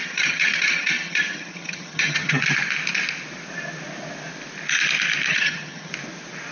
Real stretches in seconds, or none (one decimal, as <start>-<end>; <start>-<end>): 2.4-5.3; 5.9-6.5